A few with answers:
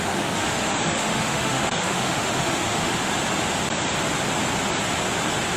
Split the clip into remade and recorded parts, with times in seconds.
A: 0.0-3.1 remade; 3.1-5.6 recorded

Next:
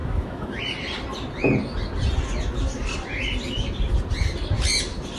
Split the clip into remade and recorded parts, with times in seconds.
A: 0.0-0.6 remade; 0.6-5.2 recorded

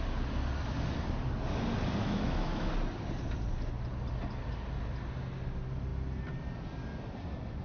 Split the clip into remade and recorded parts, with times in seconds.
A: 0.0-2.0 recorded; 2.0-2.7 remade; 2.7-7.6 recorded